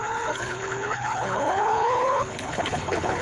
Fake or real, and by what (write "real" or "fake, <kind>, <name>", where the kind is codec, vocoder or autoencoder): fake, codec, HILCodec